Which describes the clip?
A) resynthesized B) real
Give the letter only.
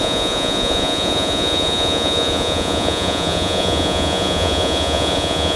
A